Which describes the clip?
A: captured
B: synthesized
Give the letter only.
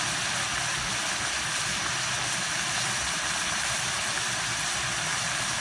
A